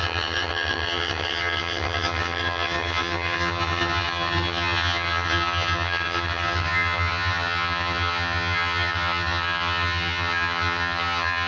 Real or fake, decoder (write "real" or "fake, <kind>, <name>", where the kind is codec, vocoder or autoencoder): fake, vocoder, HiFi-GAN